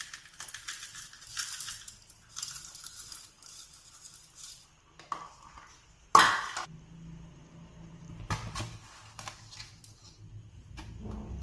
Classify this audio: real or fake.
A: real